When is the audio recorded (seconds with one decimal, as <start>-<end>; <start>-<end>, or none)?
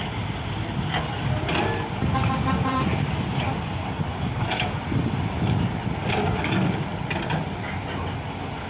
0.0-8.7